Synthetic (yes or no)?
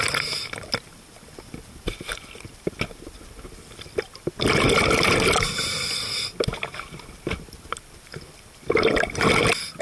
no